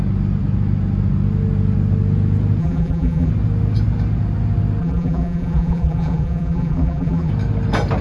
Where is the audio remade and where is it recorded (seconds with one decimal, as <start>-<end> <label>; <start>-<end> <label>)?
0.0-2.6 recorded; 2.6-3.3 remade; 3.3-4.8 recorded; 4.8-7.3 remade; 7.3-8.0 recorded